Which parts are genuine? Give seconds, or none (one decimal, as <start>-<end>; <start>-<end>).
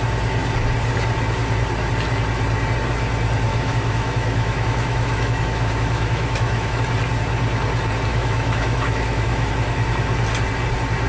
0.0-3.5; 6.8-8.1; 9.5-11.1